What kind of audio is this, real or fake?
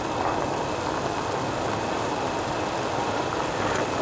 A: real